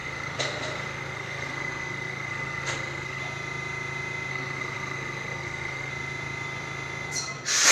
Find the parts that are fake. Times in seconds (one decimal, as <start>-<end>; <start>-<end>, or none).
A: 0.0-3.2; 4.3-5.9